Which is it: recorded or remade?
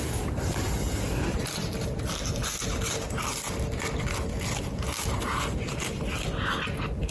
recorded